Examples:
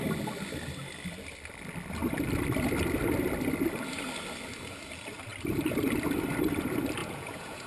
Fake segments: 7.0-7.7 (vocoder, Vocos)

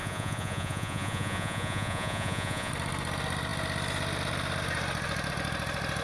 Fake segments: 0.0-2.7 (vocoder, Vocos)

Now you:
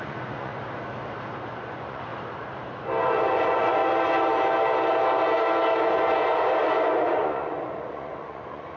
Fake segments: 0.0-0.5 (vocoder, Vocos); 1.5-2.1; 3.0-3.8; 7.1-8.8